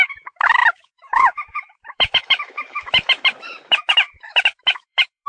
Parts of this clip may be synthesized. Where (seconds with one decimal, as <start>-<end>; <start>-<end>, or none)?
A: 0.0-5.3